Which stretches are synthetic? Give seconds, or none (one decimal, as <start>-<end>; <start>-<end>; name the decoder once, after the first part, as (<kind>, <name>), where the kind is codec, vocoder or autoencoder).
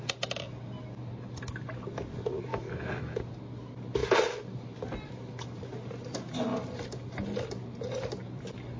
2.5-3.2 (autoencoder, DAC-VAE)